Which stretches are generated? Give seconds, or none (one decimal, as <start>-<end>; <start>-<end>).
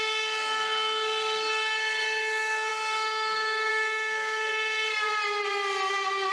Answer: 0.0-5.1